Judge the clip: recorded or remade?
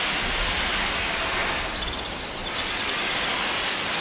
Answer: recorded